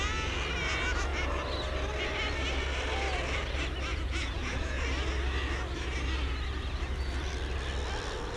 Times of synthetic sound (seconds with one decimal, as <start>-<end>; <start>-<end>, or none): 3.9-4.8